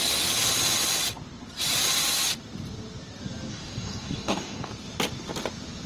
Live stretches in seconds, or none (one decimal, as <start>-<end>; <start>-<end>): 0.0-3.5; 4.7-5.9